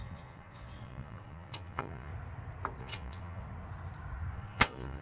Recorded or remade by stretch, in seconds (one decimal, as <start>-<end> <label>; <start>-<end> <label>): 0.0-2.1 remade; 2.1-2.8 recorded; 2.8-3.4 remade; 3.4-4.3 recorded; 4.3-5.0 remade